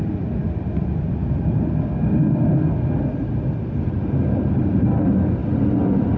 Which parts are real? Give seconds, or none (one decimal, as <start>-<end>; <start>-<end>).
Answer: 0.0-6.2